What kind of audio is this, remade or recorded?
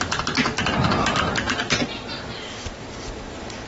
recorded